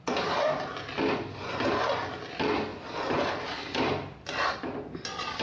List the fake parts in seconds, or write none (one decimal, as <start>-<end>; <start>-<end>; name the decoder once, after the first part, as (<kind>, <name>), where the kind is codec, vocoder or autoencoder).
none